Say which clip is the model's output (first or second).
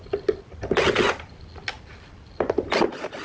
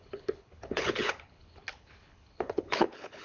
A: second